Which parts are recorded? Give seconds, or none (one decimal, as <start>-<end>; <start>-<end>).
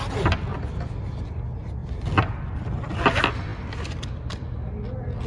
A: 0.0-0.5; 1.2-1.8; 2.7-3.5; 4.3-5.3